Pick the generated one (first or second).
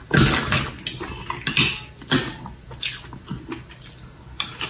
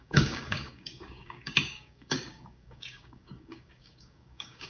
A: second